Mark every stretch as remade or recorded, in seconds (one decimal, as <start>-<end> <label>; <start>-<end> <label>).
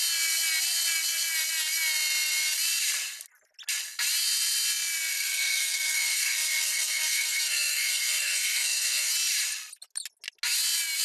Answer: 0.0-5.1 recorded; 5.1-9.1 remade; 9.1-11.0 recorded